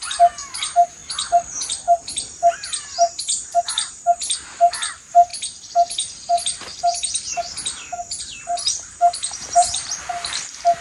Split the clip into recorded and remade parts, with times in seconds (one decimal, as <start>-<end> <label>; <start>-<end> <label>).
0.0-1.0 remade; 1.0-3.6 recorded; 3.6-5.3 remade; 5.3-8.2 recorded; 8.2-10.8 remade